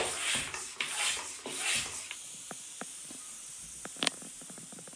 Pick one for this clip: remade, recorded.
recorded